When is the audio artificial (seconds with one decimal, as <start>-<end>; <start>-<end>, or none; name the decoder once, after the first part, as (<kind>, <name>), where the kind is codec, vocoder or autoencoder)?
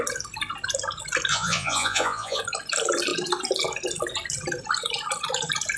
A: 1.3-2.4 (vocoder, Vocos)